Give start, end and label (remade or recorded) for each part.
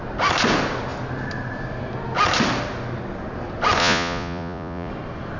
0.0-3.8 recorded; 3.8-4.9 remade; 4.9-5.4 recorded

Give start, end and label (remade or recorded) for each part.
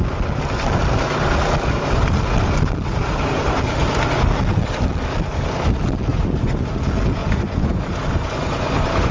0.0-6.1 recorded; 6.1-6.7 remade; 6.7-7.2 recorded; 7.2-9.1 remade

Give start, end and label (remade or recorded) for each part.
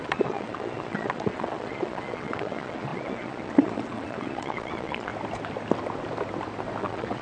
0.0-5.1 remade; 5.1-6.8 recorded; 6.8-7.2 remade